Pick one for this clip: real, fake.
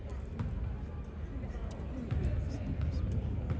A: real